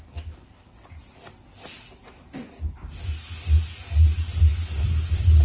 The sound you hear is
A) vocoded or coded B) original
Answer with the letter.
B